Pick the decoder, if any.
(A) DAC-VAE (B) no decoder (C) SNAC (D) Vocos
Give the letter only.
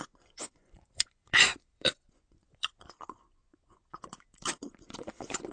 D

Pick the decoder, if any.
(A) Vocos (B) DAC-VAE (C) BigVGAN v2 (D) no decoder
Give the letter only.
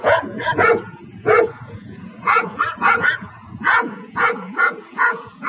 A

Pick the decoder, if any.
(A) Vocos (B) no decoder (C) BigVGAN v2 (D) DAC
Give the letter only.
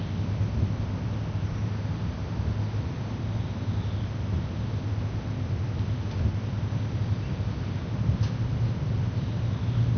B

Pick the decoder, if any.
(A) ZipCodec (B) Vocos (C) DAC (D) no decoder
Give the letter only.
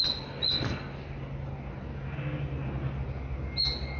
D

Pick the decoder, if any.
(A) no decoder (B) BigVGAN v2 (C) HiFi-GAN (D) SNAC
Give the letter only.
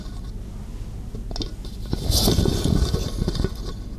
A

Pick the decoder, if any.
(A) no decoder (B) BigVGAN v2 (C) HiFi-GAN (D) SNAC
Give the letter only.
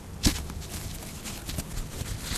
A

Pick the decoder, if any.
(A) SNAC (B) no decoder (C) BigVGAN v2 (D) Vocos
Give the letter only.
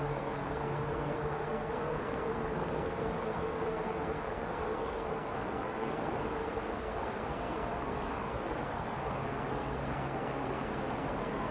A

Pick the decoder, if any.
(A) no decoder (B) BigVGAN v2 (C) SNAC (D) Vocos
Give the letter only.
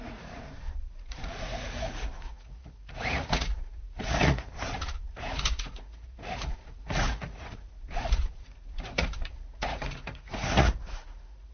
D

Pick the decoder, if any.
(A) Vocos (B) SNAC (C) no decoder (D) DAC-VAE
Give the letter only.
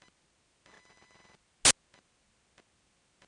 C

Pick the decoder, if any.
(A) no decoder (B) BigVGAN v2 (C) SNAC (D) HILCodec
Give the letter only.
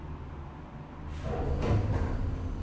A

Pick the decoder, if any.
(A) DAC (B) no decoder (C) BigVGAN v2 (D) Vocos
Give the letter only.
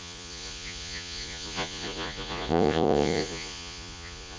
D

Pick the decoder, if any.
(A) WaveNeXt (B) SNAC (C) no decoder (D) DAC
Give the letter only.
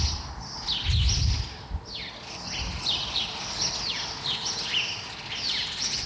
C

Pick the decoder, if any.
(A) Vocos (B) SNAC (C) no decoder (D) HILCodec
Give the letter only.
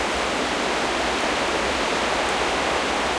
C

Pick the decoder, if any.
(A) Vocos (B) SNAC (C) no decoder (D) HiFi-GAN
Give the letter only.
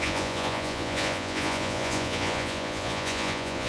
A